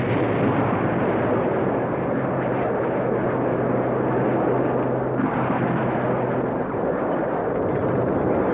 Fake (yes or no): no